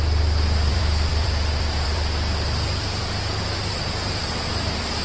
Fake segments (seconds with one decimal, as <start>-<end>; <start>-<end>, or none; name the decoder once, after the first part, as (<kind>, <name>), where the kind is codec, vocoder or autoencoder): 0.7-3.2 (vocoder, BigVGAN v2)